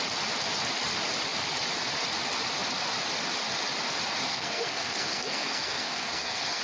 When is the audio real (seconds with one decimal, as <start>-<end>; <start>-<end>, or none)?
0.0-4.3